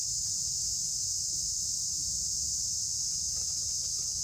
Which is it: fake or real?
real